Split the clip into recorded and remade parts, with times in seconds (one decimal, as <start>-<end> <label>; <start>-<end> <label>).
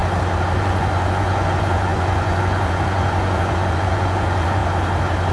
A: 0.0-0.6 recorded; 0.6-4.6 remade; 4.6-5.3 recorded